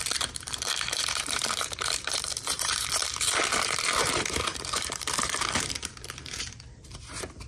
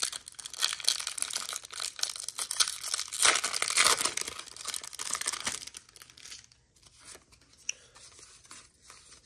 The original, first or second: second